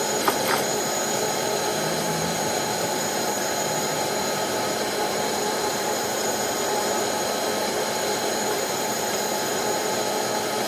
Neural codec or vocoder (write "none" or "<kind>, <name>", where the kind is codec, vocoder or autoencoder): vocoder, BigVGAN v2